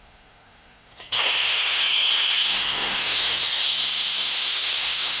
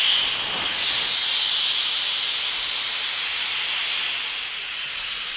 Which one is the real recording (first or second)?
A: second